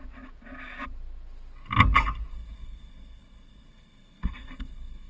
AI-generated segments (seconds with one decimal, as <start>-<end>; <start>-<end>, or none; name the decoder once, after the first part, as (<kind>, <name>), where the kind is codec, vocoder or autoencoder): 2.3-5.1 (codec, SNAC)